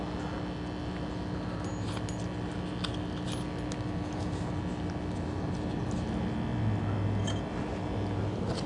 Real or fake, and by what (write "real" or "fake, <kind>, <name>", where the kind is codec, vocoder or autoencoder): real